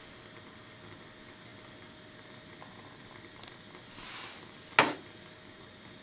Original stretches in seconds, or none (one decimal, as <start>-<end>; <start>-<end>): 0.0-6.0